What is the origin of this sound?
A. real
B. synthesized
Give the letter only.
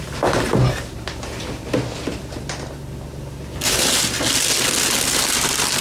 A